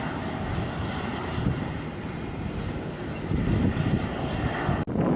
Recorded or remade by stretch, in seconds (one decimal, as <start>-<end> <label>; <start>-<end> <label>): 0.0-1.1 recorded; 1.1-2.0 remade; 2.0-5.2 recorded